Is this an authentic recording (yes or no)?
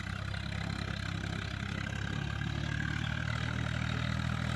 yes